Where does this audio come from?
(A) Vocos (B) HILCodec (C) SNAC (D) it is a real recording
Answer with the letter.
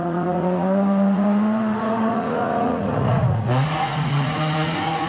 A